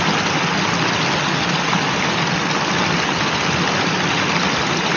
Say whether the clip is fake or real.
real